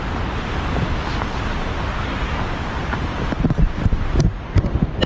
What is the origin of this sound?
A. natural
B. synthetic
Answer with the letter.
A